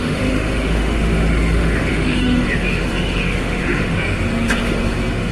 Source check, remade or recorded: remade